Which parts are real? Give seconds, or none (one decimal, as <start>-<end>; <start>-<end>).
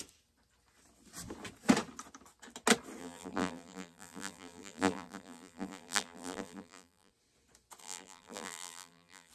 0.0-3.0; 7.1-7.8